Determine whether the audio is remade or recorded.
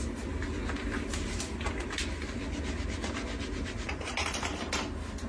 recorded